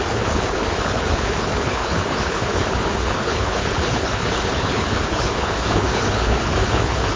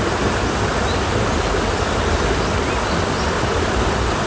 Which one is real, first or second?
second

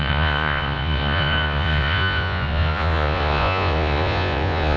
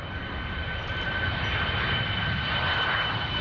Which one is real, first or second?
second